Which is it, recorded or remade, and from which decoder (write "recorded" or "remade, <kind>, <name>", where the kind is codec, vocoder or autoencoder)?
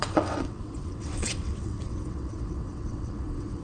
remade, vocoder, WaveNeXt